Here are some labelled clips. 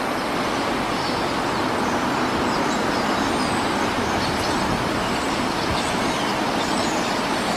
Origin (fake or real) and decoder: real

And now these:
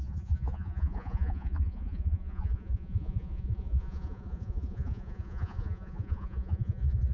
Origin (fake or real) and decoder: fake, vocoder, Vocos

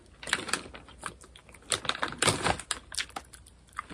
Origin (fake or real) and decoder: real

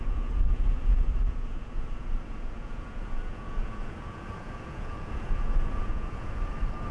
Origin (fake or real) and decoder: fake, vocoder, Vocos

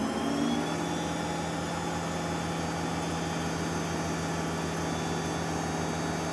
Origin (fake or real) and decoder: real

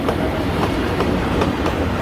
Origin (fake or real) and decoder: fake, vocoder, BigVGAN v2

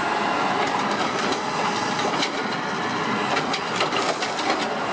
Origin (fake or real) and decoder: real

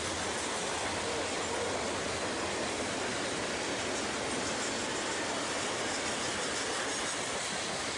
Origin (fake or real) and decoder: real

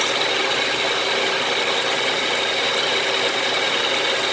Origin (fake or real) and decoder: real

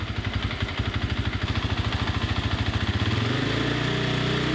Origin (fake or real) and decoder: real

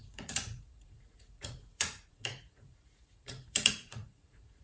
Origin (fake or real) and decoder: fake, vocoder, Vocos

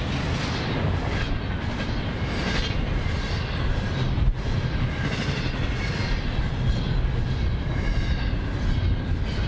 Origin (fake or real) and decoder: real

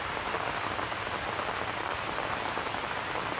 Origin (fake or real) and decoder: real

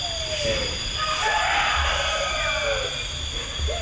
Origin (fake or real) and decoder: real